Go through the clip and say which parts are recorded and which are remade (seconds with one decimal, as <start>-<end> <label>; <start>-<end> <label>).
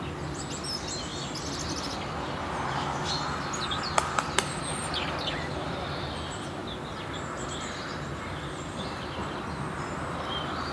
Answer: 0.0-10.7 recorded